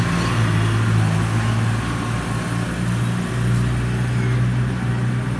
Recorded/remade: recorded